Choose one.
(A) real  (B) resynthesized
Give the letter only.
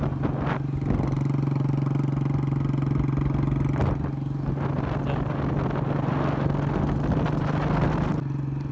A